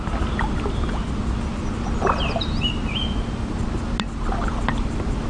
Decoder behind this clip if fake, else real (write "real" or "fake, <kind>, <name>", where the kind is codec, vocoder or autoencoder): real